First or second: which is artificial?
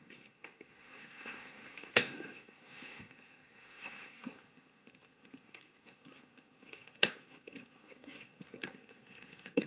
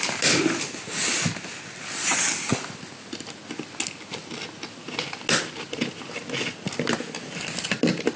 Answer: first